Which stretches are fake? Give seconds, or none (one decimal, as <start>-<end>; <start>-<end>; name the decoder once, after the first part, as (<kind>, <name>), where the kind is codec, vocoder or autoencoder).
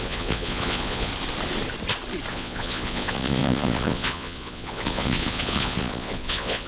0.0-1.1 (vocoder, Vocos); 2.3-6.7